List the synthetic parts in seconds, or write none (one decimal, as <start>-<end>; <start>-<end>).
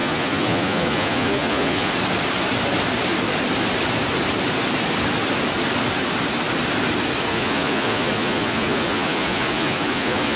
0.0-1.9; 7.3-10.4